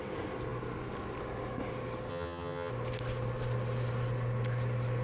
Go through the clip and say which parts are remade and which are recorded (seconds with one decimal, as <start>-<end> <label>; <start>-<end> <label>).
0.0-2.1 recorded; 2.1-2.7 remade; 2.7-5.0 recorded